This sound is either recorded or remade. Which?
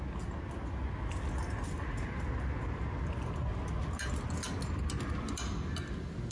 recorded